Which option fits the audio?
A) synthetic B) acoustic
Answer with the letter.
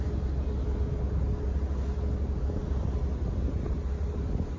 B